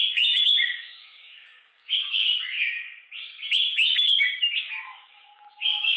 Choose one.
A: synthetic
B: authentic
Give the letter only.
A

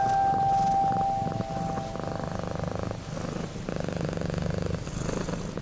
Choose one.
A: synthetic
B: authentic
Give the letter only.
B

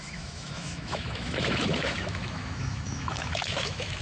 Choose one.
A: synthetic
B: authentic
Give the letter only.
A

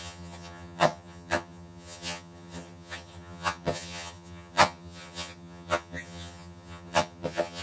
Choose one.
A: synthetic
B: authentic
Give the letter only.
A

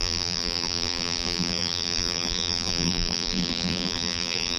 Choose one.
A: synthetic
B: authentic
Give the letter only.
A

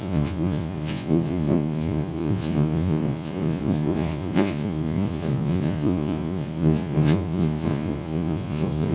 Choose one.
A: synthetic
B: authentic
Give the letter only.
A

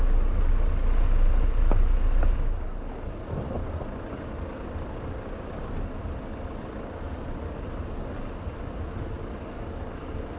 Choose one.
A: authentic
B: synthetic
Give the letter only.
A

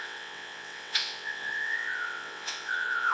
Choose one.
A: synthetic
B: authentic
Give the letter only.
A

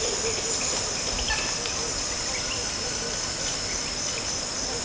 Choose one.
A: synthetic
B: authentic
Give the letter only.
B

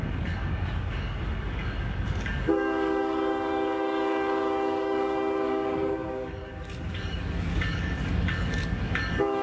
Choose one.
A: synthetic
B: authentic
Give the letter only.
A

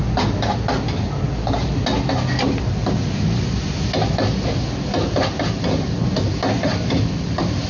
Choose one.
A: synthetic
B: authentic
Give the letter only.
B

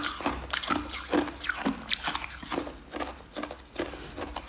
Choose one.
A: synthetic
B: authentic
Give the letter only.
B